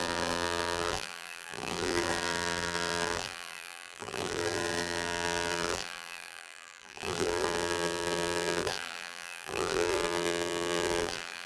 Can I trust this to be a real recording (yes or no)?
no